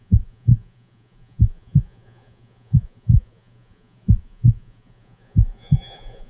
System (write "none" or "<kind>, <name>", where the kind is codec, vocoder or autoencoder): vocoder, Vocos